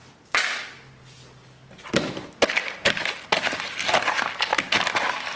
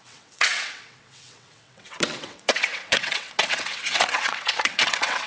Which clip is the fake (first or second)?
second